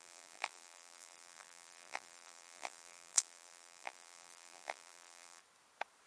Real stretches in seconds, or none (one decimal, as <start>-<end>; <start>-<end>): 5.4-6.1